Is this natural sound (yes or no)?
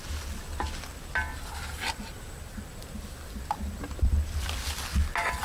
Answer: yes